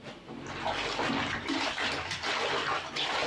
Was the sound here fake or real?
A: real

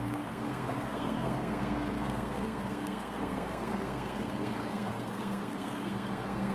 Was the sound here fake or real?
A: fake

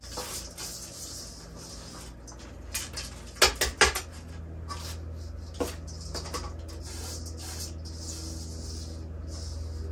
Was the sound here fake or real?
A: real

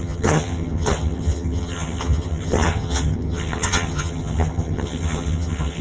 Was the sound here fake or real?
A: fake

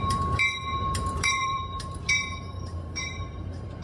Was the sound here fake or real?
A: fake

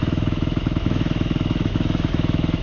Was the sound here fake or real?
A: fake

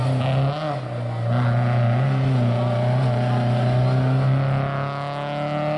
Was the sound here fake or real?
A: real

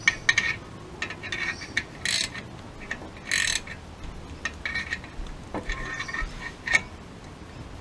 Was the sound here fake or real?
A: real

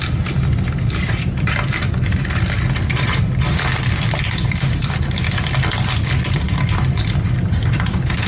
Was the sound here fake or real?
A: real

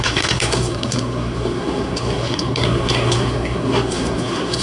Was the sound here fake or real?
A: fake